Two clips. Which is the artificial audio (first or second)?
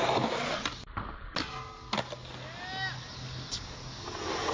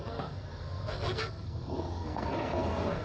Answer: second